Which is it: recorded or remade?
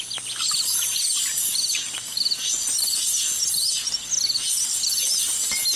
recorded